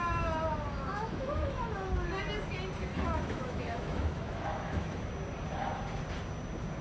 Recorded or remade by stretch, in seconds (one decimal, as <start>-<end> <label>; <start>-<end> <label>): 0.0-0.9 recorded; 0.9-1.7 remade; 1.7-2.9 recorded; 2.9-5.1 remade; 5.1-6.8 recorded